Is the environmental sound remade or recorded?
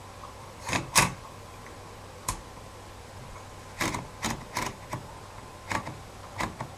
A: remade